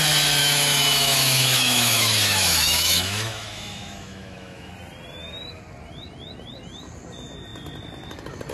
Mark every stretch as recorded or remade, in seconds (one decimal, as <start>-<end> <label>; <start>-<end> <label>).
0.0-0.4 recorded; 0.4-4.7 remade; 4.7-8.5 recorded